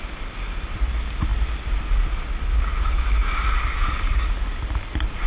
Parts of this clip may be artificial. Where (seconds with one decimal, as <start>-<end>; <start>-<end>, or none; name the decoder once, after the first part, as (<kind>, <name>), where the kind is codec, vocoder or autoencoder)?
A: none